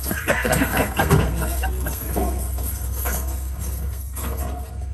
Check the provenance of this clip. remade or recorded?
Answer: remade